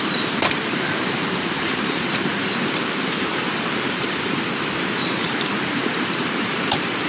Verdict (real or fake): fake